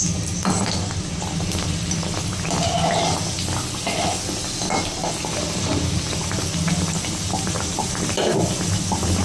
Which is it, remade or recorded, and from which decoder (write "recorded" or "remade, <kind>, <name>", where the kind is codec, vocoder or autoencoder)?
recorded